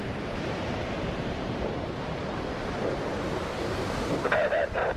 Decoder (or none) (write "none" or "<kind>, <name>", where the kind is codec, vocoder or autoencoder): vocoder, BigVGAN v2